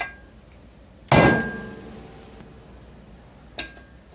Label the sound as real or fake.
real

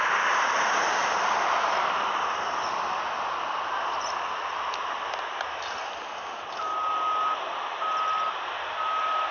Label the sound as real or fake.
real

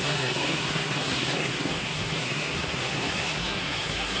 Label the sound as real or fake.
fake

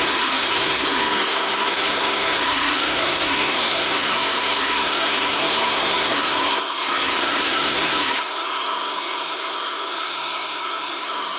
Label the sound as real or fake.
fake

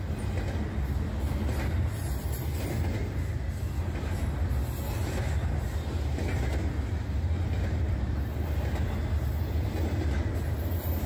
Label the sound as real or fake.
real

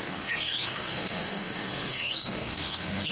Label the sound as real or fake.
fake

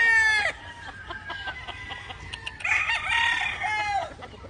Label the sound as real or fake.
real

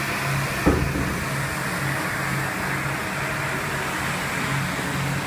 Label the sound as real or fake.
real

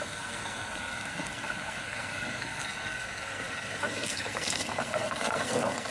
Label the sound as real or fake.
fake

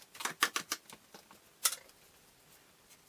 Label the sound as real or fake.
real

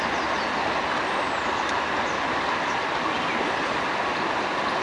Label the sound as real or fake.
real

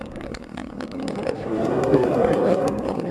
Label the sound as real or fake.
fake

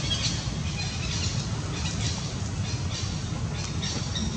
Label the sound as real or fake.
real